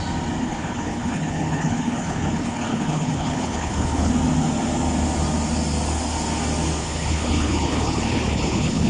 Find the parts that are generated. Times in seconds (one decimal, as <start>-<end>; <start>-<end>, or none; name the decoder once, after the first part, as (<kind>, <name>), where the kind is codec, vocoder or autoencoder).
0.4-4.1 (codec, HILCodec); 6.8-8.9